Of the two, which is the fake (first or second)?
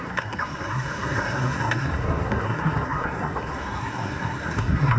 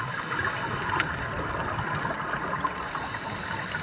first